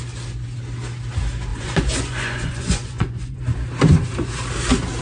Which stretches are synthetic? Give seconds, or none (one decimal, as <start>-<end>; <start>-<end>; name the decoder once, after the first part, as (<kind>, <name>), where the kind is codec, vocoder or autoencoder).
1.5-3.4 (vocoder, Vocos)